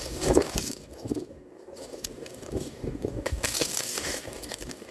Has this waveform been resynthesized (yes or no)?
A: yes